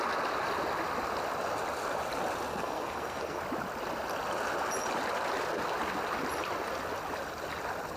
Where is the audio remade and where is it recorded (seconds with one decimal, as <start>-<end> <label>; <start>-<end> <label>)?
0.0-2.5 recorded; 2.5-3.4 remade; 3.4-8.0 recorded